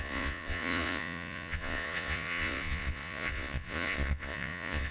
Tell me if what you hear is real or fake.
fake